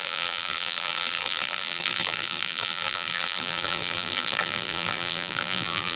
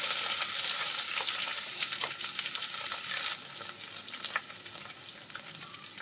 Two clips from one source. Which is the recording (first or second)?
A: second